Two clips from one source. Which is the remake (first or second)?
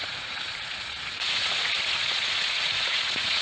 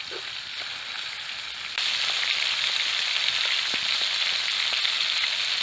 first